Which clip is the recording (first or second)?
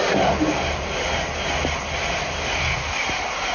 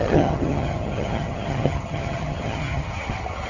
first